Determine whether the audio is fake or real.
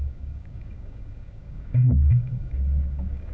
fake